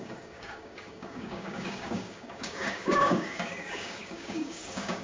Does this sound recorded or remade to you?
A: remade